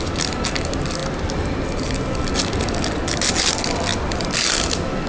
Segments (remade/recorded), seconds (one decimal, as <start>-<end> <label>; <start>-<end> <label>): 0.0-3.9 recorded; 3.9-4.5 remade; 4.5-5.1 recorded